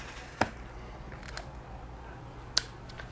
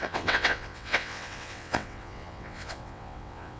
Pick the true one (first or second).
first